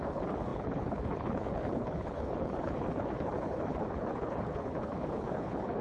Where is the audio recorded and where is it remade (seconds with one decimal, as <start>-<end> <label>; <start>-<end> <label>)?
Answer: 0.0-5.8 remade